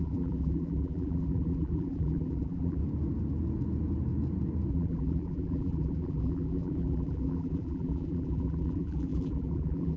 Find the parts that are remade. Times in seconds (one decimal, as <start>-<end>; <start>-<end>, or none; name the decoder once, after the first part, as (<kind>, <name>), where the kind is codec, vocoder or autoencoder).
0.0-2.8 (vocoder, BigVGAN v2); 4.7-10.0